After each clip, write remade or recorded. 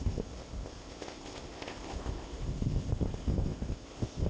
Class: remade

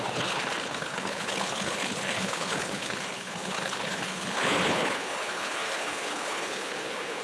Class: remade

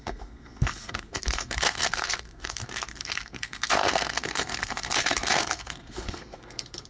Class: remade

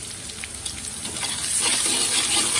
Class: recorded